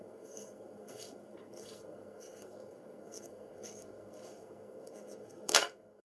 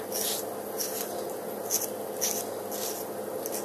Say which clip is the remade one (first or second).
first